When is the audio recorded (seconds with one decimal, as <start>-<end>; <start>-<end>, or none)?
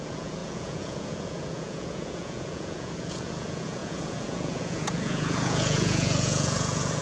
none